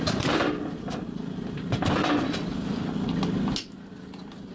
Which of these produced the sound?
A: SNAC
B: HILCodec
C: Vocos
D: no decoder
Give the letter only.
D